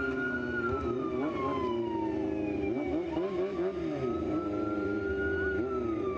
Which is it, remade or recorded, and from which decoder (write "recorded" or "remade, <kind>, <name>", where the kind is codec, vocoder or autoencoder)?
recorded